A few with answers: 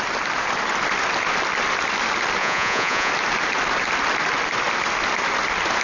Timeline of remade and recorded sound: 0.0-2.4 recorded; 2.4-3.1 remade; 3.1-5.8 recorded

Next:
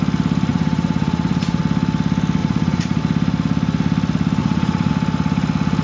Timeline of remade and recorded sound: 0.0-0.5 recorded; 0.5-1.6 remade; 1.6-2.4 recorded; 2.4-3.0 remade; 3.0-4.4 recorded; 4.4-4.9 remade; 4.9-5.8 recorded

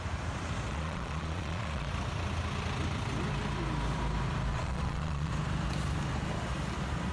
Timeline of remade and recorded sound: 0.0-0.7 recorded; 0.7-1.9 remade; 1.9-4.5 recorded; 4.5-5.3 remade; 5.3-7.1 recorded

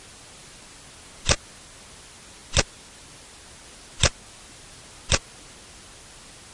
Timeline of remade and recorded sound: 0.0-6.5 recorded

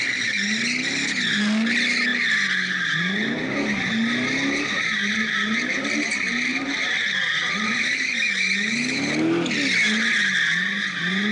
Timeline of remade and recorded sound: 0.0-11.3 recorded